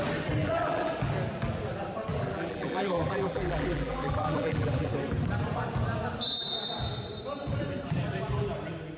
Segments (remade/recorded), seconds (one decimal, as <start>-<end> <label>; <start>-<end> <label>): 0.0-0.4 recorded; 0.4-0.9 remade; 0.9-2.1 recorded; 2.1-4.9 remade; 4.9-9.0 recorded